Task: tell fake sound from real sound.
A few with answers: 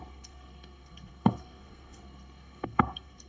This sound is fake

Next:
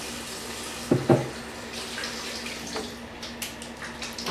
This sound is real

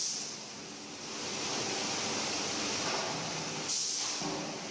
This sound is real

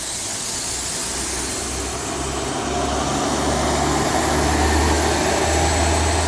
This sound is real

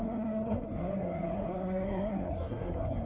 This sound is fake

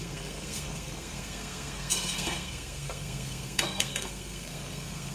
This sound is fake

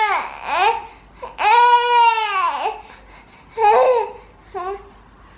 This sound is real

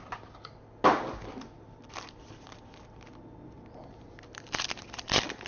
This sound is real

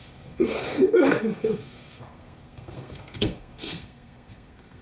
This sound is fake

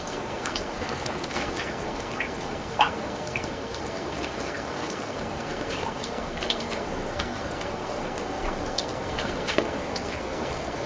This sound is fake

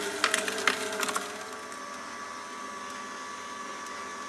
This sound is real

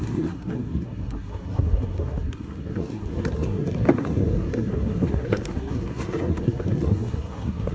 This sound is fake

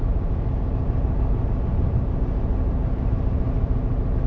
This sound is real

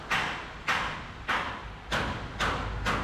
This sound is real